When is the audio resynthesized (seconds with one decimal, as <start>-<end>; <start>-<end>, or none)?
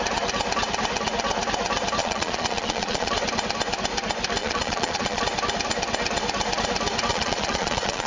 2.0-3.1; 4.4-5.2; 7.1-8.1